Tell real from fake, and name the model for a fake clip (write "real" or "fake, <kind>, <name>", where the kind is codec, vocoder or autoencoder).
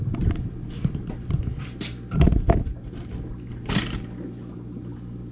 real